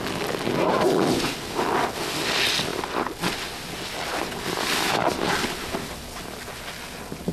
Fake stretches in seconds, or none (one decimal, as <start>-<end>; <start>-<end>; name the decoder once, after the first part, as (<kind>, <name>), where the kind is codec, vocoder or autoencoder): 0.7-1.8 (vocoder, BigVGAN v2); 2.7-6.2